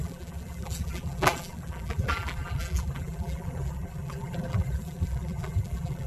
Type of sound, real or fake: fake